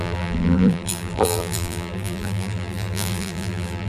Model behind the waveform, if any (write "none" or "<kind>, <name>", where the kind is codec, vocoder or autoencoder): vocoder, BigVGAN v2